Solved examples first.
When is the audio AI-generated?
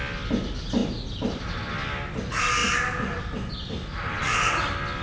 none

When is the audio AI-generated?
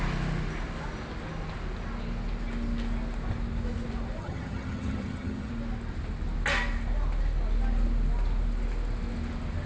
4.2-5.5 (vocoder, HiFi-GAN)